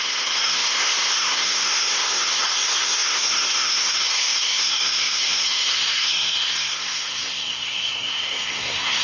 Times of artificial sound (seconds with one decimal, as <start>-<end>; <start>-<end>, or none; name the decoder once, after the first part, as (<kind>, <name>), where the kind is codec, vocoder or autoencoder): 0.0-9.0 (codec, SNAC)

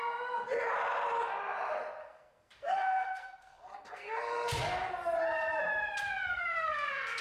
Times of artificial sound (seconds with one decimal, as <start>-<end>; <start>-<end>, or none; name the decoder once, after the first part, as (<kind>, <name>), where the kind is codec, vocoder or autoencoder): 2.0-4.5 (codec, SNAC); 6.3-7.2

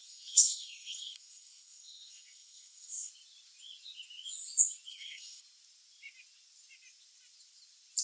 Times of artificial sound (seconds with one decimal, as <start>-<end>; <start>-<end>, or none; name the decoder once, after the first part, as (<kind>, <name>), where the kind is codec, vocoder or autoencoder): 0.0-3.1 (codec, SNAC); 4.9-5.4

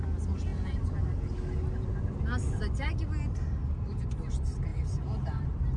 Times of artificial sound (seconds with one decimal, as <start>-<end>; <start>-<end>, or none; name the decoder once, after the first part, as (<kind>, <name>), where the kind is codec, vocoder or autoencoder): none

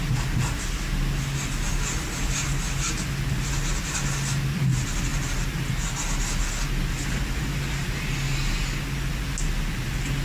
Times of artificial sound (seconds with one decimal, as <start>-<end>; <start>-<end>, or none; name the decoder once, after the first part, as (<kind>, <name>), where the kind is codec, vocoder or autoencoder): none

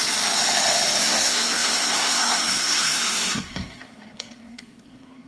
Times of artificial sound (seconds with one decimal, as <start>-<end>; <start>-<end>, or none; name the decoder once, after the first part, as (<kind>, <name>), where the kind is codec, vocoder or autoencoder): 1.0-5.3 (codec, SNAC)

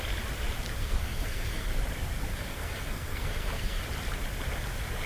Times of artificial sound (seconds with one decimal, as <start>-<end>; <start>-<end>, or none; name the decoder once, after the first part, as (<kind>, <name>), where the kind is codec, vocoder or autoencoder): 0.8-1.7 (codec, SNAC); 2.3-3.8